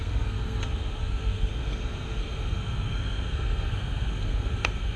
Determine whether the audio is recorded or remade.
remade